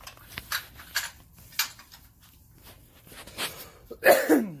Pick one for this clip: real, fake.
real